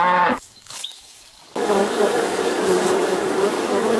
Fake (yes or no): yes